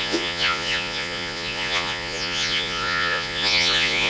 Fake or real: fake